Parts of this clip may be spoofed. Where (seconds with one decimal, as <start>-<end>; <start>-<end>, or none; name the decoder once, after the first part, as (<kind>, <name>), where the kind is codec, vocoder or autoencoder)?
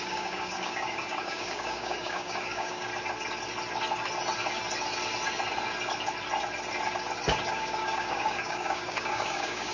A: 0.0-2.9 (codec, DAC); 7.5-9.7